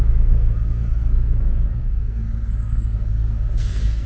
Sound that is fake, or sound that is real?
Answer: fake